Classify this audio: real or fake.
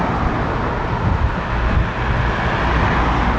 real